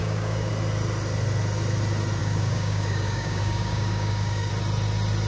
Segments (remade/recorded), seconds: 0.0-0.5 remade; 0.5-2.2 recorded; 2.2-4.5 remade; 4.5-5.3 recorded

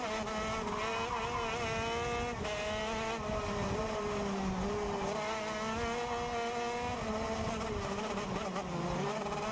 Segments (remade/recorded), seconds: 0.0-9.5 recorded

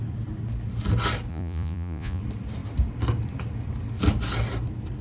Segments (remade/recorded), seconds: 0.0-1.3 recorded; 1.3-2.2 remade; 2.2-5.0 recorded

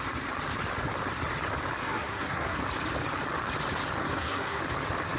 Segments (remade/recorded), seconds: 0.0-1.8 recorded; 1.8-2.6 remade; 2.6-4.0 recorded; 4.0-4.6 remade; 4.6-5.2 recorded

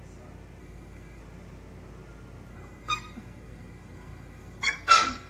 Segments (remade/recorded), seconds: 0.0-0.6 recorded; 0.6-1.2 remade; 1.2-2.5 recorded; 2.5-5.3 remade